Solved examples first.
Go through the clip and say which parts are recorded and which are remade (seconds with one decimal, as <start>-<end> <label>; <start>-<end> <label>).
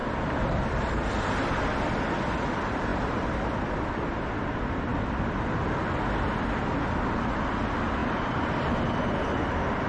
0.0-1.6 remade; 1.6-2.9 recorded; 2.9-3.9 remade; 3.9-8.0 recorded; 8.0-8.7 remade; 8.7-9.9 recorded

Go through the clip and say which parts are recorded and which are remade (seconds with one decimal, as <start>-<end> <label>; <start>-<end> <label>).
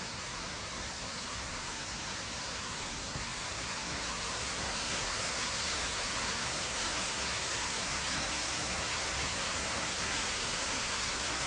0.0-11.5 remade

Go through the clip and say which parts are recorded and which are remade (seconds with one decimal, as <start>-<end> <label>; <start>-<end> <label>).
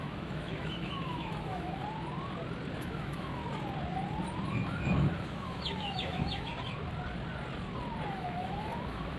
0.0-1.8 remade; 1.8-2.8 recorded; 2.8-3.4 remade; 3.4-4.5 recorded; 4.5-6.5 remade; 6.5-8.1 recorded; 8.1-9.2 remade